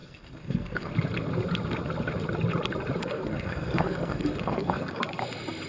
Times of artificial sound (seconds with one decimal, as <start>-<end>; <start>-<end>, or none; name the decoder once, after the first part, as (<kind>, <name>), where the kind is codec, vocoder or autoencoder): 0.0-0.9 (codec, SNAC); 3.0-5.0